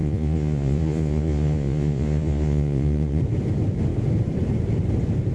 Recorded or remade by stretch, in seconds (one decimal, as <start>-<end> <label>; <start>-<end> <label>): 0.0-3.2 remade; 3.2-5.3 recorded

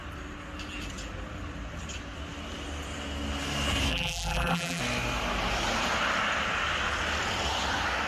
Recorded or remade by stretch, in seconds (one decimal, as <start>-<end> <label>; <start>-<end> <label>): 0.0-3.9 recorded; 3.9-4.8 remade; 4.8-8.1 recorded